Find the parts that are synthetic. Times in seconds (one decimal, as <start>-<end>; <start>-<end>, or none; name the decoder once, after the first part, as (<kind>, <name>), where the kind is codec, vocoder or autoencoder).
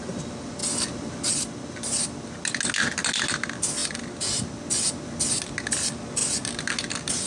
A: none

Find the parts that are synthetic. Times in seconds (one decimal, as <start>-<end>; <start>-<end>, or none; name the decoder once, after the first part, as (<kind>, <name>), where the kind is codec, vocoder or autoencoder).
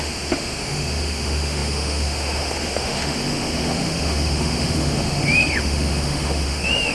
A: 0.0-6.9 (autoencoder, DAC-VAE)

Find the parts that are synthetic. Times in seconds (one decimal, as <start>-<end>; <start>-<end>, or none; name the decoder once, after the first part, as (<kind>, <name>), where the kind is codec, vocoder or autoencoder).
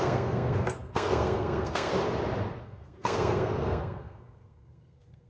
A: 0.0-1.9 (codec, SNAC); 2.6-5.3